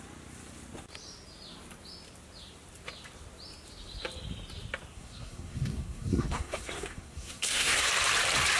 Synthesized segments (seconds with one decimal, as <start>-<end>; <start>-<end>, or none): 4.9-7.9